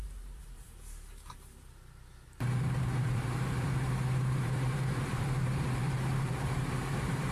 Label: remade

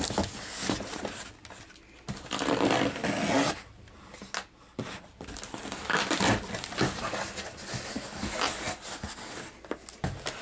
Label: recorded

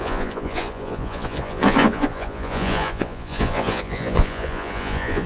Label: remade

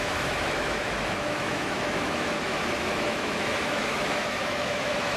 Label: remade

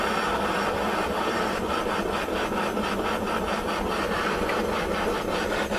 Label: recorded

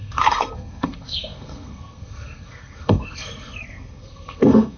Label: remade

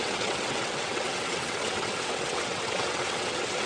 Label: remade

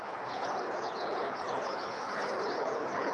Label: remade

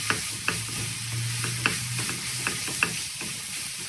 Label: recorded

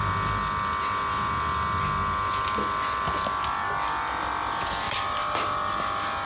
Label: recorded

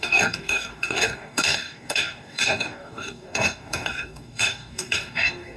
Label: remade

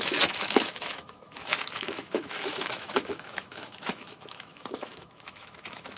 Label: remade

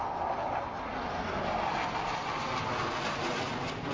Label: recorded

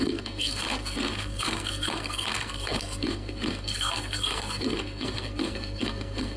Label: remade